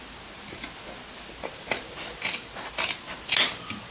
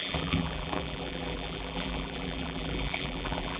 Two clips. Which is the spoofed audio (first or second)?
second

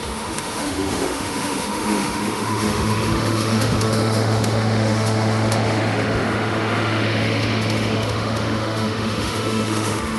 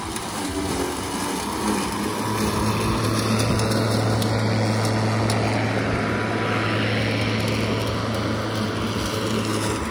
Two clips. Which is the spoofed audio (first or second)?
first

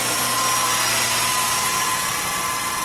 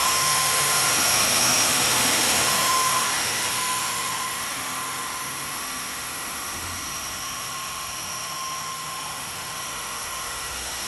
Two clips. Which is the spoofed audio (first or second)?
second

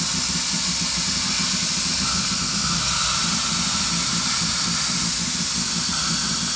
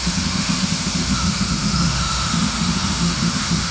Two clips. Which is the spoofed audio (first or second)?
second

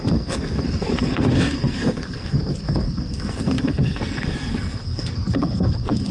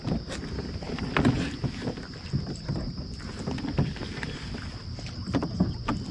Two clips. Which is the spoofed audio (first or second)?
first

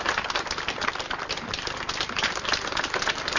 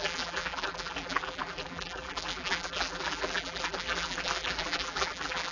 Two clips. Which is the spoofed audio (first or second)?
second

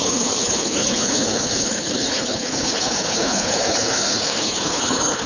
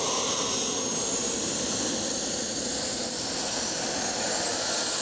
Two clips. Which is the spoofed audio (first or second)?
first